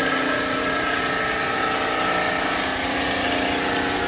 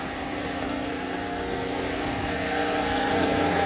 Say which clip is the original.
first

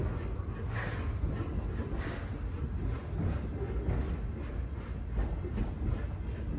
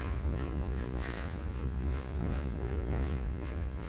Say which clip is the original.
first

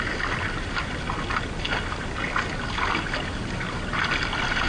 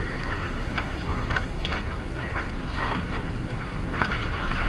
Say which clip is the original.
first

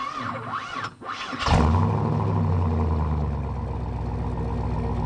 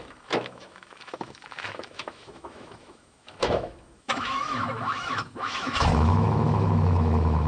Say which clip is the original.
first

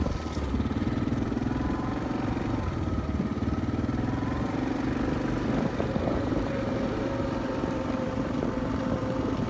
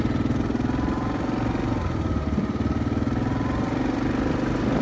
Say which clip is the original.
second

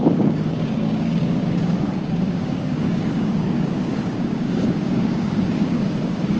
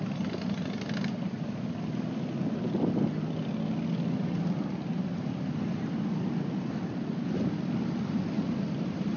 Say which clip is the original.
second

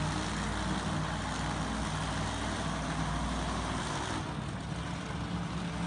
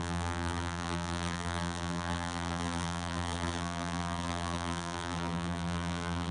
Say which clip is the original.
first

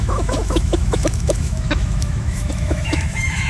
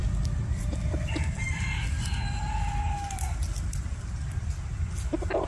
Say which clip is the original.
second